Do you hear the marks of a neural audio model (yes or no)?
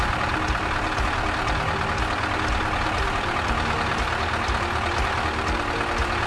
no